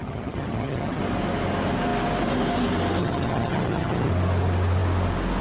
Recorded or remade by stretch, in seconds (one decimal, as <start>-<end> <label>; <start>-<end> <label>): 0.0-1.0 remade; 1.0-3.0 recorded; 3.0-4.1 remade; 4.1-5.4 recorded